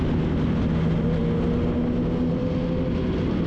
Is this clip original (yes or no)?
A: yes